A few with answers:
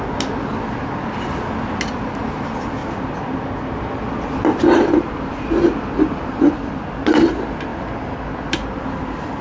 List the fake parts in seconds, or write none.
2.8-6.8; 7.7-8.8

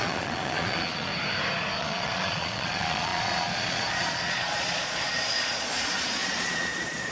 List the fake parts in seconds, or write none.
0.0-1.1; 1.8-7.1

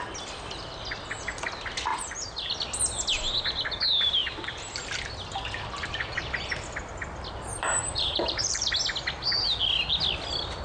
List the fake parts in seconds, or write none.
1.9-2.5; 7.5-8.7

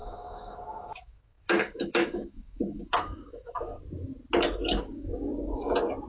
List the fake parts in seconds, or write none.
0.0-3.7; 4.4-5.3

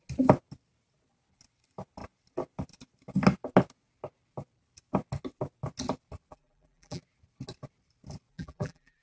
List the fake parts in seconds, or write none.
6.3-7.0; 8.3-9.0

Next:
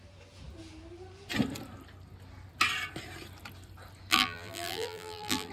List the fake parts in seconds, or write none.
4.1-5.5

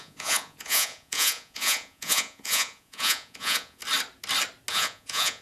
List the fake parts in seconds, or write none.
0.0-3.8; 4.7-5.4

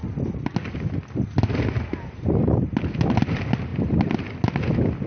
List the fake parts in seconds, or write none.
none